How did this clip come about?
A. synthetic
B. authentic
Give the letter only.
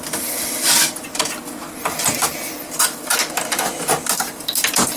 A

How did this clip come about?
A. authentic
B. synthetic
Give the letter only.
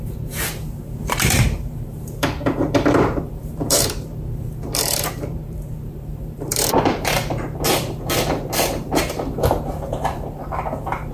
B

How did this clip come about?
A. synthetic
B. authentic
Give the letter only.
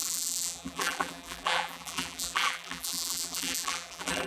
A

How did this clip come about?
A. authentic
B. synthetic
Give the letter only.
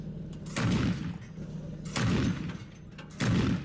A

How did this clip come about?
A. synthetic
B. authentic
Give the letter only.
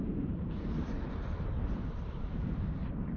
A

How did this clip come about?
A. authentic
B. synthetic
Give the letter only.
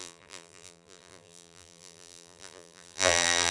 B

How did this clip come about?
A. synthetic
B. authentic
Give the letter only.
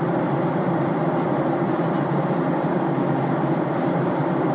A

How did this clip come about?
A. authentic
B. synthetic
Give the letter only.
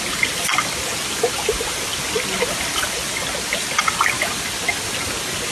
A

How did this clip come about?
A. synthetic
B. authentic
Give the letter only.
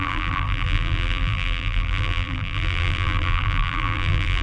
A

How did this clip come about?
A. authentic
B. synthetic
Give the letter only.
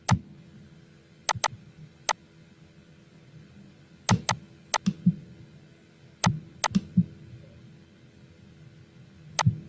A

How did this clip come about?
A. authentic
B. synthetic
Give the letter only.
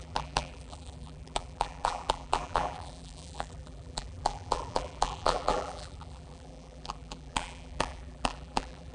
B